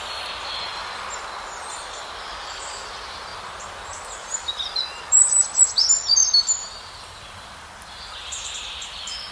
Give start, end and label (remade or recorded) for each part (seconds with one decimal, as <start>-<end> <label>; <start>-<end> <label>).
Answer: 0.0-6.2 recorded; 6.2-7.2 remade; 7.2-9.3 recorded